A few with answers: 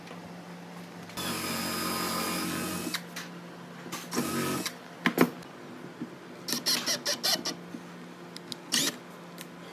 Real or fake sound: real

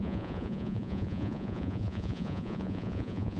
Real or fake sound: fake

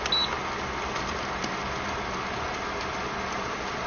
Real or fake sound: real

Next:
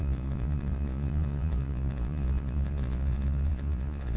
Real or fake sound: fake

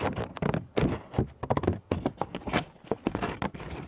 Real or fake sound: real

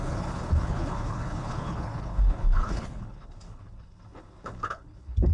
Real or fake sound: fake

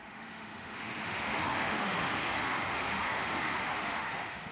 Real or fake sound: fake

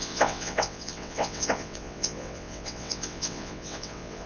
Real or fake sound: fake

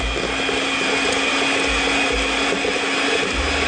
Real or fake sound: real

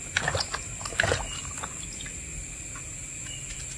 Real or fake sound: real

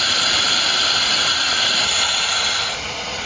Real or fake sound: fake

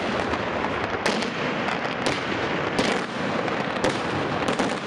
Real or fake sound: real